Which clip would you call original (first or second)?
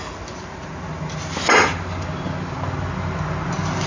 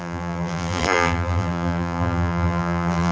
first